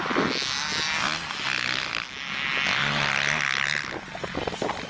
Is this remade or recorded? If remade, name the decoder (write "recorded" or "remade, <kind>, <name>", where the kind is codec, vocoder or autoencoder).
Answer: recorded